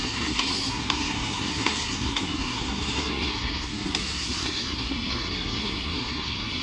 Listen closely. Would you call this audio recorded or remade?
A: remade